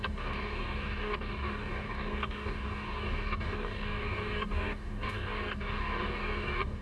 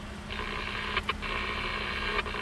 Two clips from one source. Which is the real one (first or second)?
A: second